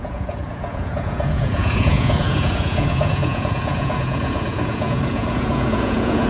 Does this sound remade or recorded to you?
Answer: remade